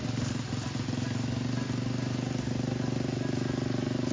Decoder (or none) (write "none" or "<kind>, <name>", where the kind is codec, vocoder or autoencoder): none